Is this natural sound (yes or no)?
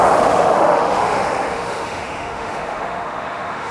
no